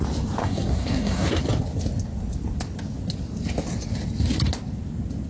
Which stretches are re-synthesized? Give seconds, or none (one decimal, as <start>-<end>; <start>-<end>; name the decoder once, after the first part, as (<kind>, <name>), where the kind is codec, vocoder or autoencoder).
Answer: 0.4-1.4 (codec, SNAC)